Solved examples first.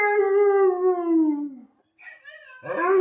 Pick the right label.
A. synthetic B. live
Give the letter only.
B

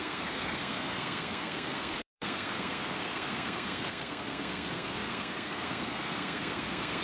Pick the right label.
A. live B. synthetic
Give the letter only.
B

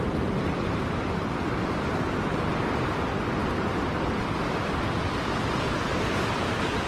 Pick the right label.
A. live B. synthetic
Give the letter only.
B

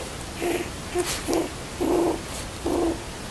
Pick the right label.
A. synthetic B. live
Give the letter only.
B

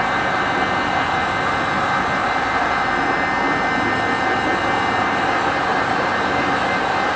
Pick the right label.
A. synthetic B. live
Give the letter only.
B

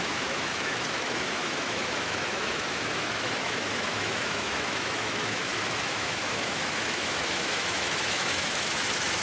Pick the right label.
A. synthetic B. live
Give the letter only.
A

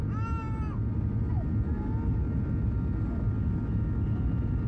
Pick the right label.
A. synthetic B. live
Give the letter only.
B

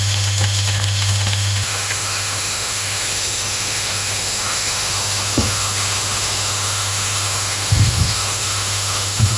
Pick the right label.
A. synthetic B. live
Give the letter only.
A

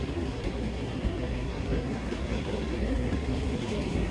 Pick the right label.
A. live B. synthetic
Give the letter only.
B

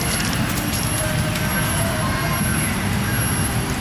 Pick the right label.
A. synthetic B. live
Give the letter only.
B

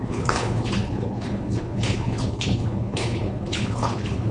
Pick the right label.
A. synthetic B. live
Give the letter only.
A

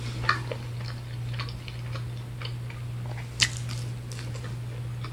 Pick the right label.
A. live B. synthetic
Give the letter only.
A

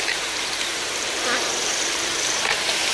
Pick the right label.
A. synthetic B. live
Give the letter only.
A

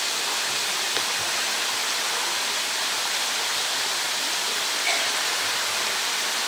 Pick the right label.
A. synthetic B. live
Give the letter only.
B